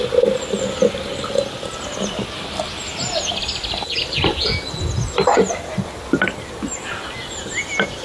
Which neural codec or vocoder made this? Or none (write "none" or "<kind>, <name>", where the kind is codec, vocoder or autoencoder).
none